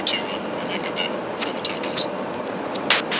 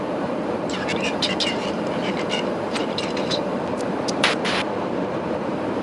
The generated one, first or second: second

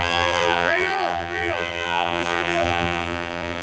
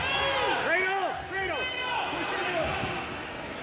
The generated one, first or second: first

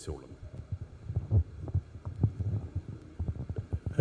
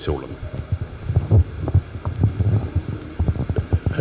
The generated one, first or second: first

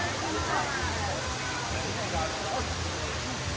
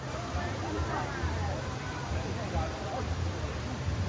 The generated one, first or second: second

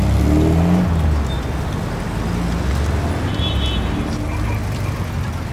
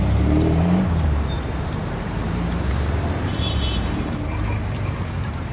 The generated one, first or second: second